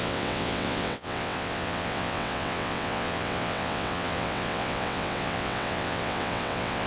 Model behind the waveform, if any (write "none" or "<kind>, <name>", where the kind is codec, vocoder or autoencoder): vocoder, WaveNeXt